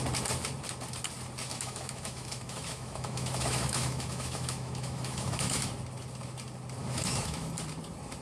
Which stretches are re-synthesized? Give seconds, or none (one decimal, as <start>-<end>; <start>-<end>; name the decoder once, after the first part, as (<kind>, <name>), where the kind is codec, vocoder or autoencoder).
1.5-5.7 (autoencoder, DAC-VAE); 6.8-7.5